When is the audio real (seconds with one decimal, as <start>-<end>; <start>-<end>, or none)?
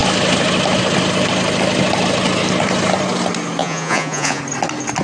0.0-3.6; 4.4-5.0